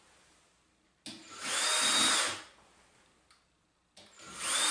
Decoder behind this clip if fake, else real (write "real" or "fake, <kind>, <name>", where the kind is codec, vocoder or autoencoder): real